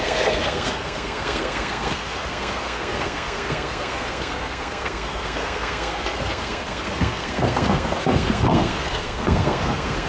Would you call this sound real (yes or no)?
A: no